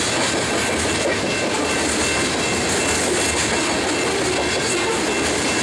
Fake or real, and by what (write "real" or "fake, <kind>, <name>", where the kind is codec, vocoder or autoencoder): real